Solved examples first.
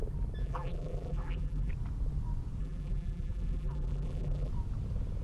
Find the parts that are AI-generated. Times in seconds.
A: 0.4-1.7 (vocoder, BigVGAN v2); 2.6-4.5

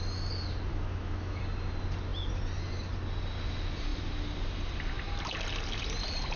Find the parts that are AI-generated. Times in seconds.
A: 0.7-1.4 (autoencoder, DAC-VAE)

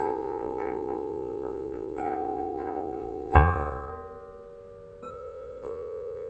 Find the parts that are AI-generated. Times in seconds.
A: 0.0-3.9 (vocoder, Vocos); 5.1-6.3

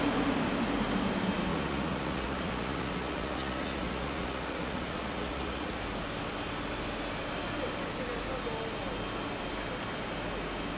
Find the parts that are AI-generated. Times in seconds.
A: 1.5-5.8 (vocoder, Vocos)